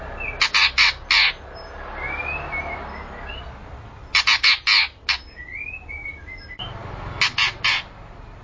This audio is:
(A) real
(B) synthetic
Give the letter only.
A